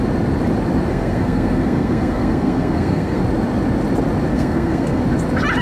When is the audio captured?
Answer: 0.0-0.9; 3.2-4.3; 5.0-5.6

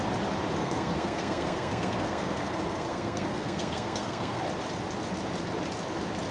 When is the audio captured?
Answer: 0.0-0.6; 4.4-6.3